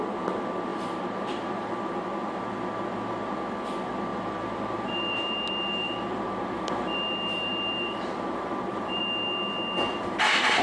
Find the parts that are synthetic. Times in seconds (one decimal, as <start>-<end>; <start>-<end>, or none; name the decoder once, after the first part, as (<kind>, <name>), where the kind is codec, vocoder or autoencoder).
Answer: 0.7-1.7 (vocoder, BigVGAN v2); 4.1-9.0

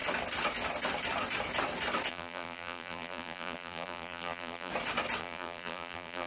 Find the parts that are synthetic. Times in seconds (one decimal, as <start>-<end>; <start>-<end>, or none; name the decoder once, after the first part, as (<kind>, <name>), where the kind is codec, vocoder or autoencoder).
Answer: 2.1-4.7 (vocoder, BigVGAN v2); 5.2-6.3

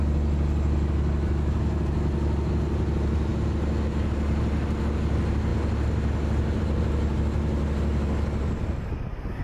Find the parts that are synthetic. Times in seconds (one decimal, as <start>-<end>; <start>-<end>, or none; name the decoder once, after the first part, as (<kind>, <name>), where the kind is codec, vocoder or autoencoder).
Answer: none

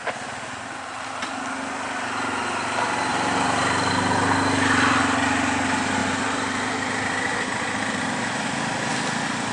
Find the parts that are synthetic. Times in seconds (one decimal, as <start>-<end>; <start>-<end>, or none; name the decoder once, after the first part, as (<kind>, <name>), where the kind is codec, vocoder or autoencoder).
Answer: 3.1-3.9 (vocoder, BigVGAN v2); 6.0-8.9

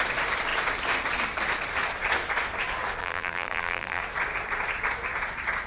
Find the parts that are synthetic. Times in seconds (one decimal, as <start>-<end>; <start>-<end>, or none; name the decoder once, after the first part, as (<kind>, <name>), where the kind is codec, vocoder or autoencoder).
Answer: 3.0-4.0 (vocoder, BigVGAN v2)

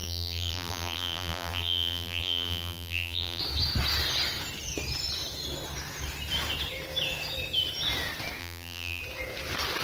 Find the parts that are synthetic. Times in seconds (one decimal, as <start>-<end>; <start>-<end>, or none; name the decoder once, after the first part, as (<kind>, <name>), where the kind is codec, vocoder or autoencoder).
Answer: 0.0-3.4 (vocoder, BigVGAN v2); 8.4-9.0